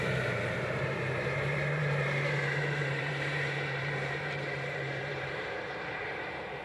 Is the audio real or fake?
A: fake